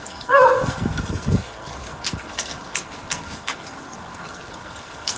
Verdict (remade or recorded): remade